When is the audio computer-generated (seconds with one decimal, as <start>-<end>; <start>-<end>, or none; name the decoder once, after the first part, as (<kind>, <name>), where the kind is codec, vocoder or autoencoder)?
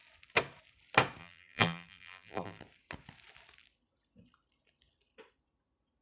1.2-2.6 (vocoder, BigVGAN v2)